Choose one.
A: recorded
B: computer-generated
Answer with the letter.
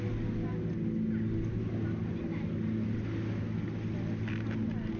A